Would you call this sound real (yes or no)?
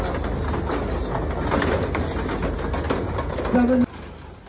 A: yes